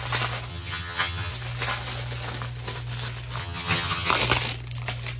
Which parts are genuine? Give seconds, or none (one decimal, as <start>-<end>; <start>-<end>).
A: 0.0-0.5; 1.3-3.4; 4.1-5.2